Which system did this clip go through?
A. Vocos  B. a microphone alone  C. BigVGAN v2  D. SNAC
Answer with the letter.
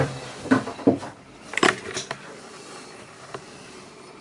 C